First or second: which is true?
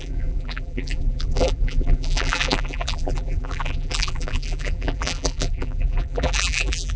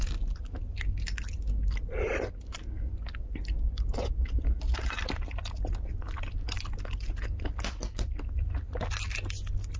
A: second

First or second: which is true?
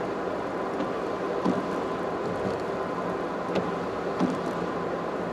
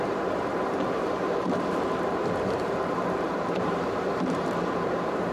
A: first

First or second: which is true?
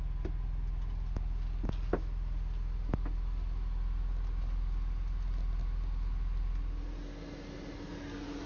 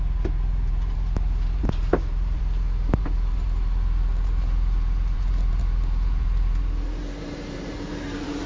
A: first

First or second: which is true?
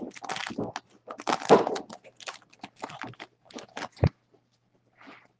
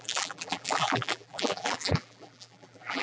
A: first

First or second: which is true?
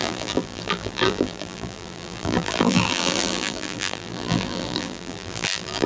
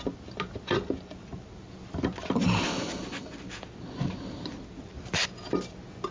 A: second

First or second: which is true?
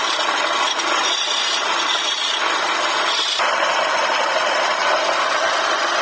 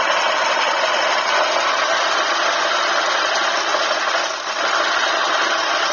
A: second